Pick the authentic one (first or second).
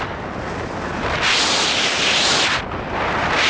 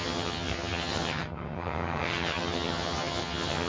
first